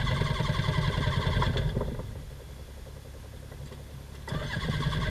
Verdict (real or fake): real